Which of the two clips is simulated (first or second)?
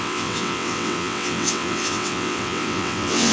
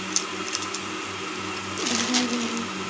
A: first